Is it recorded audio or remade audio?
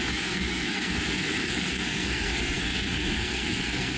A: remade